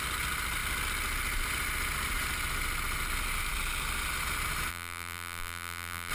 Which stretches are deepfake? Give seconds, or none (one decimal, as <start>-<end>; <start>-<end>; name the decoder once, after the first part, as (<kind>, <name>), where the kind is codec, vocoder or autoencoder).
4.7-6.1 (vocoder, BigVGAN v2)